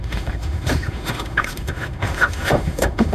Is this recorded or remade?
remade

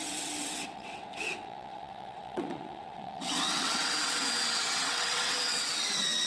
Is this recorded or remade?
remade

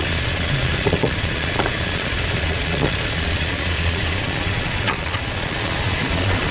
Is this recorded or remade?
remade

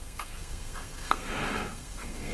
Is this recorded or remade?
remade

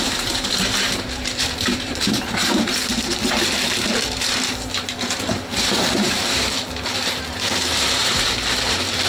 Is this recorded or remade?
remade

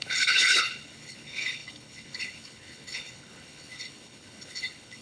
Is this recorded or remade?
remade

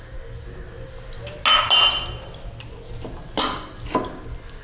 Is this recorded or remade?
recorded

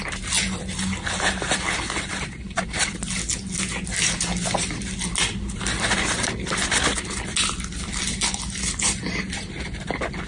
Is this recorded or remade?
recorded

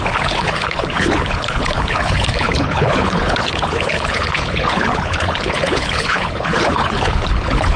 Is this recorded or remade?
remade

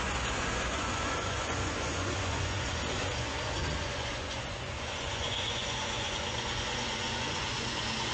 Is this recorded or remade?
remade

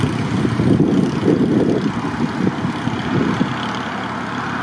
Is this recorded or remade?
recorded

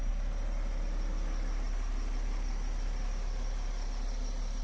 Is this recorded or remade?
recorded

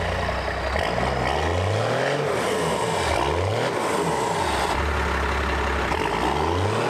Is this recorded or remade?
recorded